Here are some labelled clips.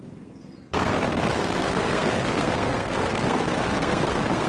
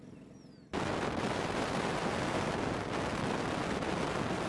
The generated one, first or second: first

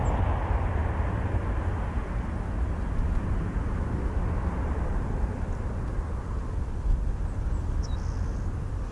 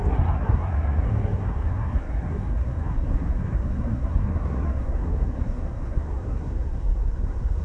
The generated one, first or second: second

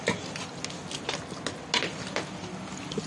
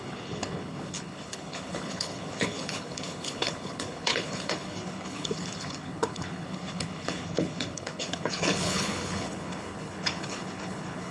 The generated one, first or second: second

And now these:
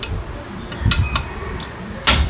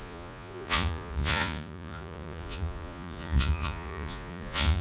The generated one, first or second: second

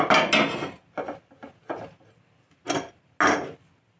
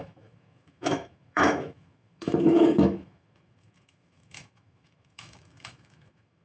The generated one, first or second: second